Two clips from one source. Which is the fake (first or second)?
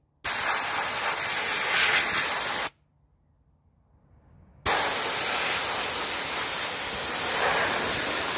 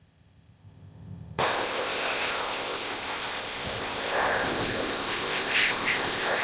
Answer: second